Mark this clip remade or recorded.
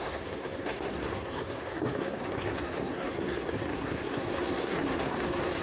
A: remade